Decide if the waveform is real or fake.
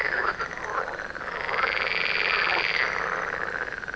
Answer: real